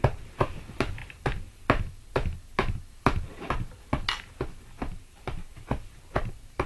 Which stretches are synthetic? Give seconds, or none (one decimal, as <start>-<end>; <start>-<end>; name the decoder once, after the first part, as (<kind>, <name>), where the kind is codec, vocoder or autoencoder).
none